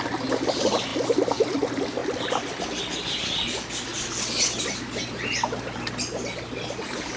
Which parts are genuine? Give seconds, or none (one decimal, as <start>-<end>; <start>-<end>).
0.0-7.2